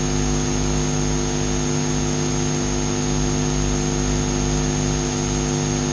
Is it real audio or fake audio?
real